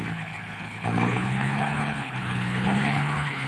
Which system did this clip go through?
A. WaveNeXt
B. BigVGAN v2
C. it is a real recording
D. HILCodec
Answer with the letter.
D